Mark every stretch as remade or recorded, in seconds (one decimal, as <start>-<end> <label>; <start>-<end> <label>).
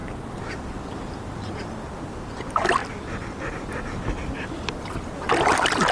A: 0.0-0.8 remade; 0.8-2.8 recorded; 2.8-3.5 remade; 3.5-5.9 recorded